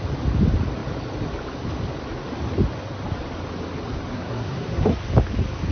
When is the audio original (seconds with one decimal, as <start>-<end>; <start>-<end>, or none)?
0.0-4.1; 5.0-5.7